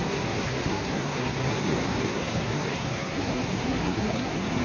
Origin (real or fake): fake